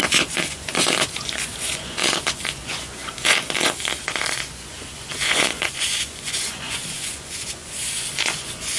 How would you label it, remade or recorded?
remade